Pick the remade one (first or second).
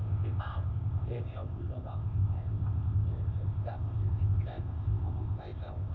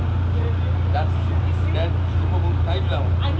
first